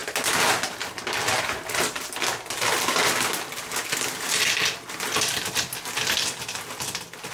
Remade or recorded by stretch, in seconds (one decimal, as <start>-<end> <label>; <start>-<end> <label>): 0.0-7.3 recorded